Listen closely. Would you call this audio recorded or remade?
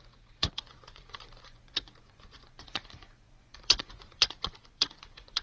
remade